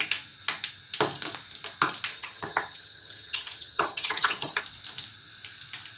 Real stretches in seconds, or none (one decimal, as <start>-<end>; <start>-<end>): 0.0-2.1; 4.6-6.0